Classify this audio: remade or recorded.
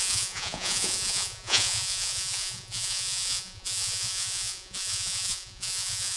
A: remade